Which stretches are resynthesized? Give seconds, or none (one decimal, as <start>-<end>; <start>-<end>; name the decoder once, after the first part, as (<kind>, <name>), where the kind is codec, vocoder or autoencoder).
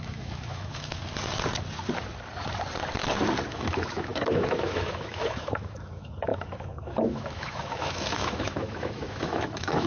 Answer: 0.0-1.0 (autoencoder, DAC-VAE); 3.5-9.9